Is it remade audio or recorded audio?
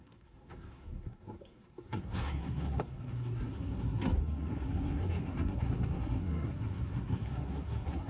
remade